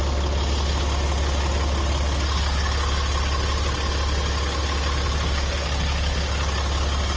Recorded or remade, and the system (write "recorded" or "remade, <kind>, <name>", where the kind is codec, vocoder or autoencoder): recorded